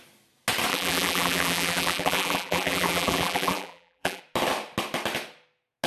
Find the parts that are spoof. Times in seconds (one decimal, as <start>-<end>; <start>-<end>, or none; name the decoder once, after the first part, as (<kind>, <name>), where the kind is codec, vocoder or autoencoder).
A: 0.7-4.2 (vocoder, BigVGAN v2)